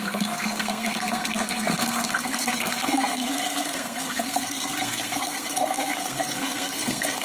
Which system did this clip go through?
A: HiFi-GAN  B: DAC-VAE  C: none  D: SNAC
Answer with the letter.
D